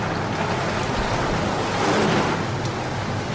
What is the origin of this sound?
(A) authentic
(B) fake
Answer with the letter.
A